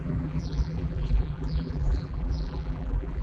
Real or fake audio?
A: fake